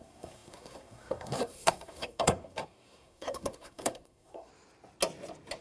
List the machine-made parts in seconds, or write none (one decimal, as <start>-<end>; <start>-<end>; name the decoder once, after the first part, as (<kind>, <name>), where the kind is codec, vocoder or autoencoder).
0.0-4.5 (codec, SNAC)